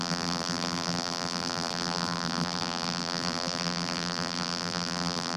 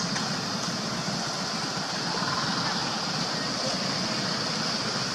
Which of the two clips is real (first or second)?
second